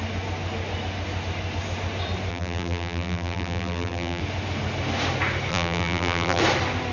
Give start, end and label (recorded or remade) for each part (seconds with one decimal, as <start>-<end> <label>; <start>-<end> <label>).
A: 0.0-2.3 recorded; 2.3-4.2 remade; 4.2-5.5 recorded; 5.5-6.4 remade; 6.4-6.9 recorded